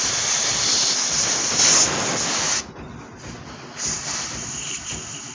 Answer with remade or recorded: recorded